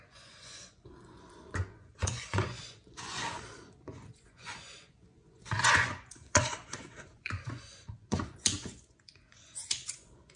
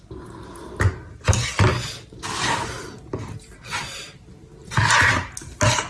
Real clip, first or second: second